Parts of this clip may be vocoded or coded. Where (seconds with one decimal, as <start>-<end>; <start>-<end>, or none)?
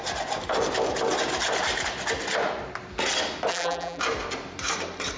3.5-4.0